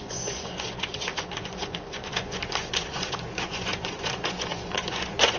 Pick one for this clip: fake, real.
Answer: fake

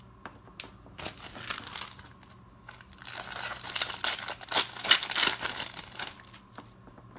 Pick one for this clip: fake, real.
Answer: real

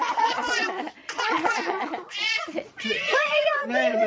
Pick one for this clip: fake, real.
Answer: fake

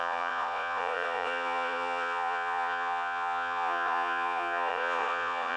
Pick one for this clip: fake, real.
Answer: fake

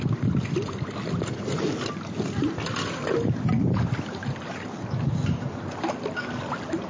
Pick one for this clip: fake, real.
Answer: real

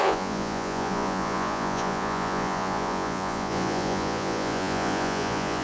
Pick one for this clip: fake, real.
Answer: fake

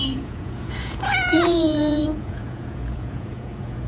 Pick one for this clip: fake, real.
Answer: fake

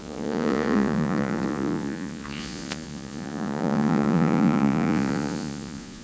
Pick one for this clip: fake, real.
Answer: fake